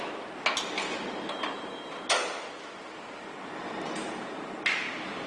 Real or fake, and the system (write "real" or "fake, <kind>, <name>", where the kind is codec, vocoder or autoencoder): real